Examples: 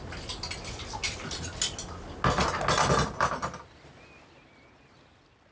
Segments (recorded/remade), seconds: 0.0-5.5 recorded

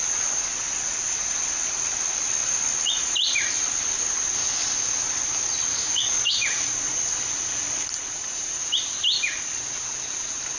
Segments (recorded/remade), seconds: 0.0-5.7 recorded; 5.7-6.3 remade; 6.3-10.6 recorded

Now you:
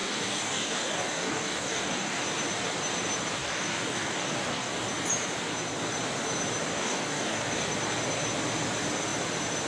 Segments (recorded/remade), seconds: 0.0-2.2 remade; 2.2-3.4 recorded; 3.4-4.9 remade; 4.9-6.7 recorded; 6.7-7.7 remade; 7.7-9.7 recorded